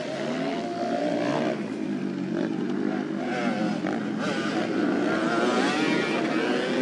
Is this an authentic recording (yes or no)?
yes